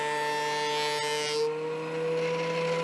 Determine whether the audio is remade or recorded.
recorded